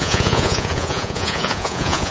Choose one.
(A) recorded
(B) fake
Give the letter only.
B